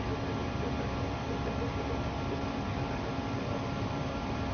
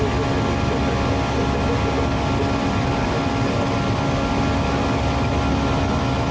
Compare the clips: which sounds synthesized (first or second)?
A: first